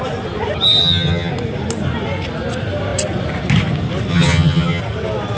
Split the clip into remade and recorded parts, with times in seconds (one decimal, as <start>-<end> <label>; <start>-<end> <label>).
0.0-0.8 recorded; 0.8-1.3 remade; 1.3-4.1 recorded; 4.1-4.8 remade; 4.8-5.4 recorded

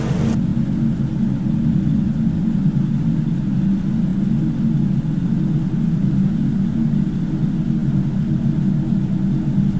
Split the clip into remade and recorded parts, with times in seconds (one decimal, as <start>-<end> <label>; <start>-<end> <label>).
0.0-9.8 recorded

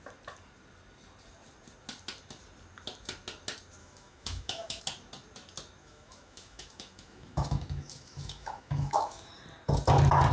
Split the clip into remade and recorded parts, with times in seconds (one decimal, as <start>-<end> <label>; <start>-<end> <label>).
0.0-3.8 recorded; 3.8-4.8 remade; 4.8-5.8 recorded; 5.8-9.3 remade; 9.3-10.3 recorded

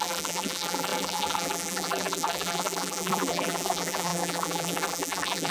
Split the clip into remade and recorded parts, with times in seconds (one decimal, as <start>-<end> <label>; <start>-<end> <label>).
0.0-5.5 remade

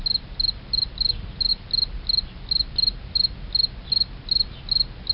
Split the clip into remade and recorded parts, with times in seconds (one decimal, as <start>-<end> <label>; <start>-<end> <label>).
0.0-5.1 recorded

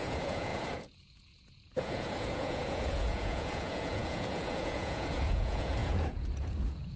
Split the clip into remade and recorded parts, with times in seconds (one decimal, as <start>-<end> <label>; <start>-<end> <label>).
0.0-7.0 remade

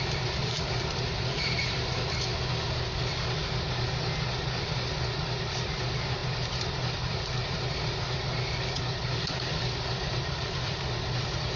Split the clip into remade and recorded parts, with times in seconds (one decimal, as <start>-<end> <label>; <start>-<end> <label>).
0.0-2.3 remade; 2.3-4.6 recorded; 4.6-11.6 remade